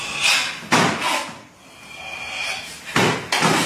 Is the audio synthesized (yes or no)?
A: no